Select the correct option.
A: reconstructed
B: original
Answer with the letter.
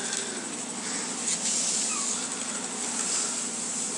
B